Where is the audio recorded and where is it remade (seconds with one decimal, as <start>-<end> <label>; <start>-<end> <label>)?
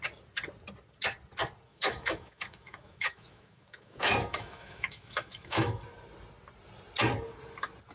0.0-1.7 recorded; 1.7-5.8 remade; 5.8-7.9 recorded